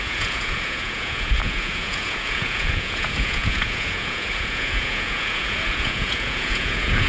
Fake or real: fake